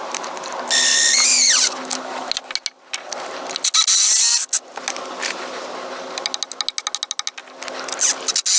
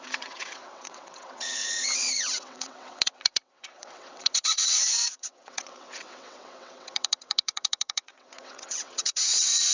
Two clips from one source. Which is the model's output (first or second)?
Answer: second